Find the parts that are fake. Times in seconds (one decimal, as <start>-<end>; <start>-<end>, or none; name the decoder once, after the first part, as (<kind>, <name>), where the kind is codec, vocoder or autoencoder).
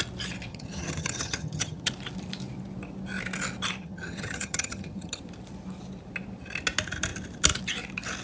0.5-1.9 (vocoder, HiFi-GAN); 3.8-5.2